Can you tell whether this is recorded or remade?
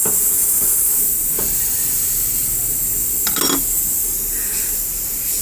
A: recorded